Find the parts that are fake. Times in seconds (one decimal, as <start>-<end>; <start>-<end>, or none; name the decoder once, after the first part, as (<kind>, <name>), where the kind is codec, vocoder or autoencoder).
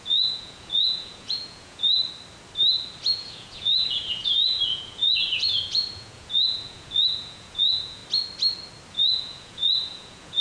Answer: 0.0-2.0 (vocoder, Vocos); 3.1-8.0; 8.9-10.4